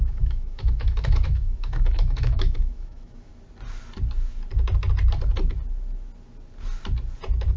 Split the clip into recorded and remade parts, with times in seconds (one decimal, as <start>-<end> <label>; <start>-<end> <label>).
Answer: 0.0-3.3 remade; 3.3-7.6 recorded